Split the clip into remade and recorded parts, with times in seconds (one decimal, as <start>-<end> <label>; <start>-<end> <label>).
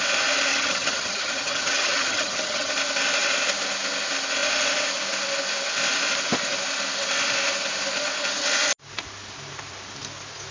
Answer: 0.0-0.5 recorded; 0.5-2.7 remade; 2.7-10.5 recorded